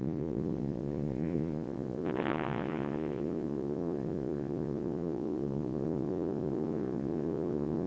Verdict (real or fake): fake